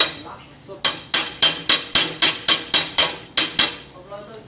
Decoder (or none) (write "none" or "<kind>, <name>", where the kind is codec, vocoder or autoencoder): none